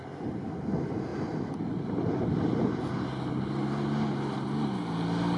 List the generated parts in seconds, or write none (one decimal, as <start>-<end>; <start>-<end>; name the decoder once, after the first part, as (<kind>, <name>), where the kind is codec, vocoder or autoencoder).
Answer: none